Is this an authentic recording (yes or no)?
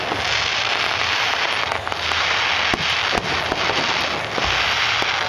yes